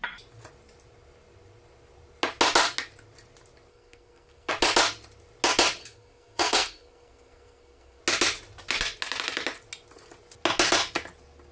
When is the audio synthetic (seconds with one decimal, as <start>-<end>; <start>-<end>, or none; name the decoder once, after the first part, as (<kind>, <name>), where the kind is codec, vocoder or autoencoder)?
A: 3.7-4.5 (codec, SNAC); 5.8-8.0

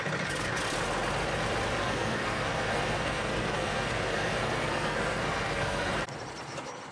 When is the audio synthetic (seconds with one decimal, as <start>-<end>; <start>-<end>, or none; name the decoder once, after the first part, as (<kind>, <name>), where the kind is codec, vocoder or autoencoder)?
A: 1.8-5.9 (codec, SNAC)